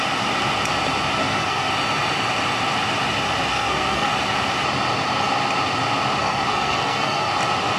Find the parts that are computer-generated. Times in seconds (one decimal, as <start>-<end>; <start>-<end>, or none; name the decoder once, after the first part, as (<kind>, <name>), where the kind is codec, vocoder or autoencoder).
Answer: 1.2-1.7 (codec, SNAC); 3.5-4.1; 6.2-7.3